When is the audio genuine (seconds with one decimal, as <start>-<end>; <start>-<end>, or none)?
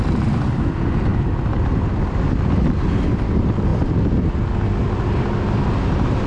0.0-6.3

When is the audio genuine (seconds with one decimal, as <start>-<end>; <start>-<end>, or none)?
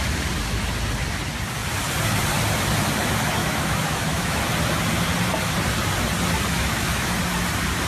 0.0-3.4; 4.4-6.6; 7.2-7.9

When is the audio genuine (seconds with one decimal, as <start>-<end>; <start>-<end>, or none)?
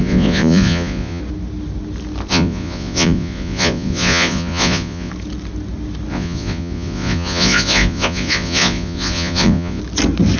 1.2-2.3; 5.1-6.1; 9.8-10.4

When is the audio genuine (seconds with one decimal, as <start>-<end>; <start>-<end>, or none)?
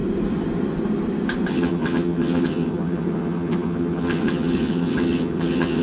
0.0-1.5